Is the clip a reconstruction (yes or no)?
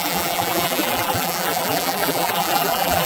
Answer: yes